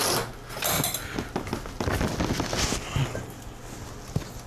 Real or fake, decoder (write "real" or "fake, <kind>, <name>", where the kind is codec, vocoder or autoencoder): real